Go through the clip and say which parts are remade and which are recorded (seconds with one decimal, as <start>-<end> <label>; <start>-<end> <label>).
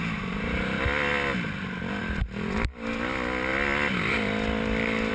0.0-5.1 recorded